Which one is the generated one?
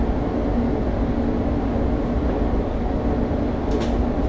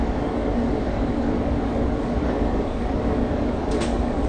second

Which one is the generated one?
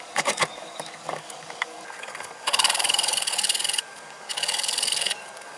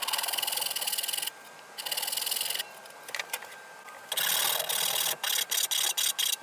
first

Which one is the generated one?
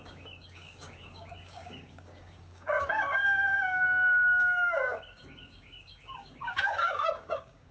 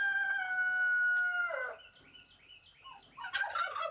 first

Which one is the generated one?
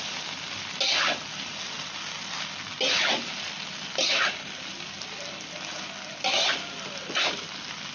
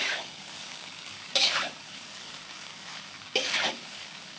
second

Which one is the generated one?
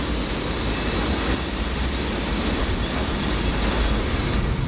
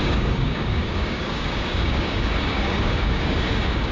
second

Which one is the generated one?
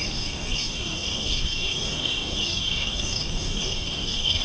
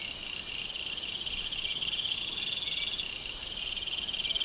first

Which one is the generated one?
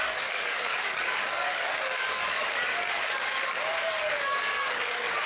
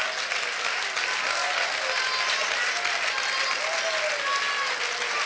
first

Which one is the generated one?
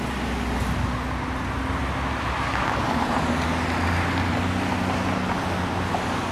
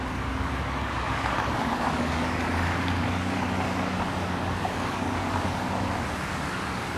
second